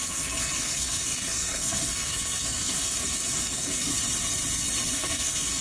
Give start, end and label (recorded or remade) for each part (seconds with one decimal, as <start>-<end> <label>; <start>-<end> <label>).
0.0-3.9 remade; 3.9-4.9 recorded; 4.9-5.6 remade